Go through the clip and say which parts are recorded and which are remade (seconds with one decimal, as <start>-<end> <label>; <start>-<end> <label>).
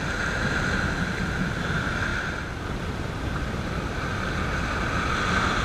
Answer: 0.0-5.6 recorded